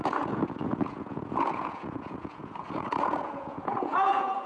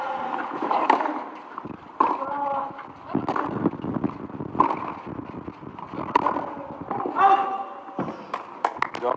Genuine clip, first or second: second